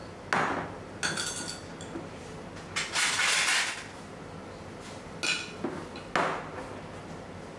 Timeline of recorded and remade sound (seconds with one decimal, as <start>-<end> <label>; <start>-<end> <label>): 0.0-7.6 recorded